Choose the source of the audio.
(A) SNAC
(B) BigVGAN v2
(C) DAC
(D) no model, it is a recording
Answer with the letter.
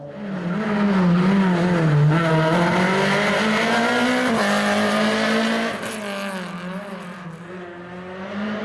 D